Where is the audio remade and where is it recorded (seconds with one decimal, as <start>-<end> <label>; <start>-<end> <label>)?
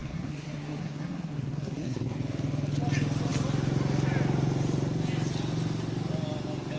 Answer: 0.0-2.2 remade; 2.2-6.8 recorded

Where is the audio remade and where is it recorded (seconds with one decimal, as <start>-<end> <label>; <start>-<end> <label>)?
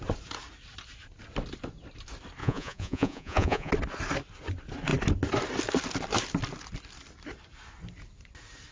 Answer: 0.0-2.4 recorded; 2.4-3.7 remade; 3.7-8.7 recorded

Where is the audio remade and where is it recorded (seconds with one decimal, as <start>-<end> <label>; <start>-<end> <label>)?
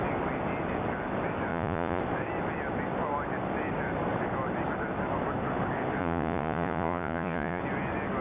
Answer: 0.0-1.5 recorded; 1.5-2.0 remade; 2.0-6.0 recorded; 6.0-7.6 remade; 7.6-8.2 recorded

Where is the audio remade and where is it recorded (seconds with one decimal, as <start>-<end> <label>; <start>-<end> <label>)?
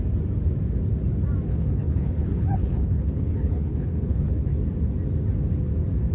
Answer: 0.0-1.5 recorded; 1.5-4.3 remade; 4.3-6.1 recorded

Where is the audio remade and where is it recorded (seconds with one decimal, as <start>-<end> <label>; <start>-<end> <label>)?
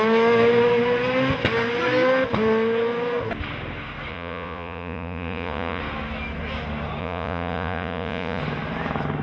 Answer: 0.0-4.1 recorded; 4.1-5.8 remade; 5.8-7.0 recorded; 7.0-8.4 remade; 8.4-9.2 recorded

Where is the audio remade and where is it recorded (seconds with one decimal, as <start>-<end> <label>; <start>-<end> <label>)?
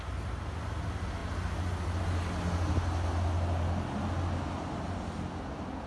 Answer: 0.0-5.9 recorded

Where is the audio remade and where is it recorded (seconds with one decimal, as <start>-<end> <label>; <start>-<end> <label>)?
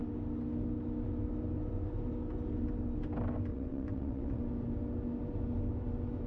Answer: 0.0-3.5 recorded; 3.5-4.4 remade; 4.4-6.3 recorded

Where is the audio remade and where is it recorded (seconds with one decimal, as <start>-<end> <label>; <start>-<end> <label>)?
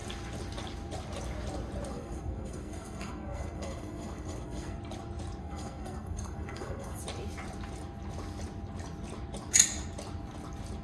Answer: 0.0-1.9 recorded; 1.9-4.8 remade; 4.8-5.4 recorded; 5.4-7.0 remade; 7.0-10.8 recorded